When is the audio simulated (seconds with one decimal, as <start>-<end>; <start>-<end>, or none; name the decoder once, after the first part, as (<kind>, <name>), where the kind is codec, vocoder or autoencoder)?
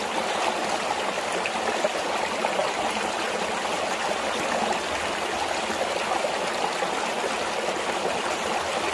none